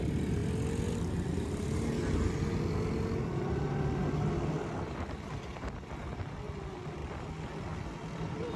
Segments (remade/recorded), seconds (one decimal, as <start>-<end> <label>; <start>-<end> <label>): 0.0-8.6 recorded